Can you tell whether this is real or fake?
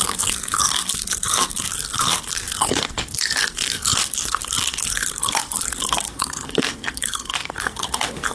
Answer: fake